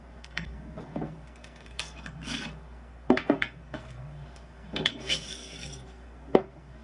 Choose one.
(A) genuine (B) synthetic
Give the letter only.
B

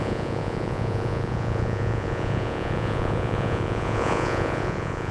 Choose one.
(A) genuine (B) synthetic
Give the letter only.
B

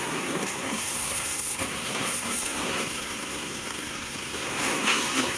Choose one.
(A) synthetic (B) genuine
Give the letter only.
A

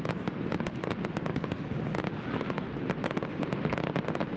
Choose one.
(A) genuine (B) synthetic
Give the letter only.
A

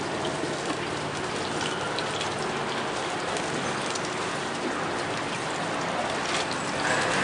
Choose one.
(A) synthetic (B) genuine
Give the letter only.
B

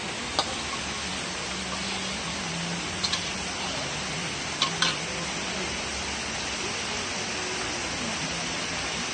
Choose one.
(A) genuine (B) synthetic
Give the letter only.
A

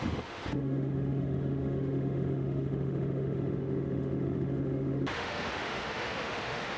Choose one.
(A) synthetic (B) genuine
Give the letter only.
A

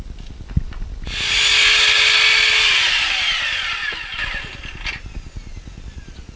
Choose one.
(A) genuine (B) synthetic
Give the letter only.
A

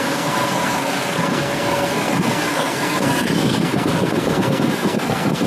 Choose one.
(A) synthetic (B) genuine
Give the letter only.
A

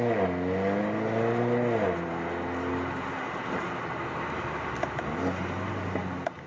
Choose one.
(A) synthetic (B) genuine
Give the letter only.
B